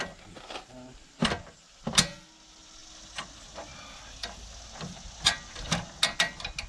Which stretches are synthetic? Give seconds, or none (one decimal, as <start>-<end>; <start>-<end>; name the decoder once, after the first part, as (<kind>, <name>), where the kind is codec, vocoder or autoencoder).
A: none